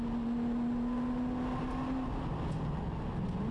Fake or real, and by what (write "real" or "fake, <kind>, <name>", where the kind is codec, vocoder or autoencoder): real